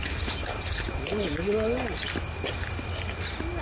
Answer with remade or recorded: recorded